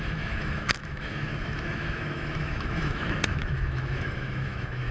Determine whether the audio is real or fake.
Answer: fake